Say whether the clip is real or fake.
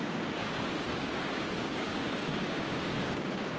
fake